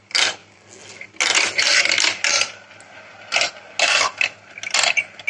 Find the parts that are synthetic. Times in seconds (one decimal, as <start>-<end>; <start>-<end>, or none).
none